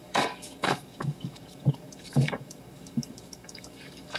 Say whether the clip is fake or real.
fake